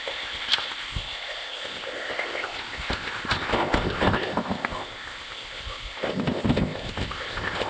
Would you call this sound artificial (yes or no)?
yes